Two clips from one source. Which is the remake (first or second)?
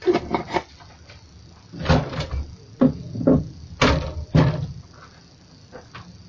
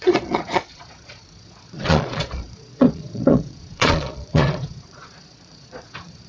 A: second